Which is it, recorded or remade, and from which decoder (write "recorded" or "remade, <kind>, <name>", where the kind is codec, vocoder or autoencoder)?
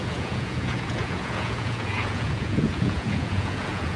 remade, vocoder, Vocos